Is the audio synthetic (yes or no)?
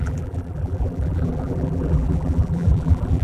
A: yes